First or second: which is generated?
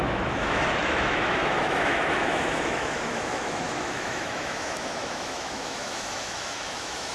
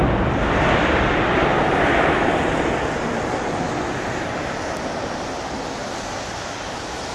first